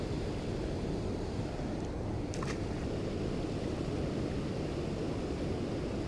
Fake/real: real